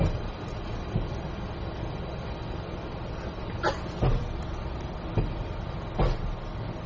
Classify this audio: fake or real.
real